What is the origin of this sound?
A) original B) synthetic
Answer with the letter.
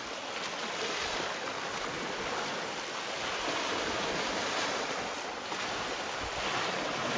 A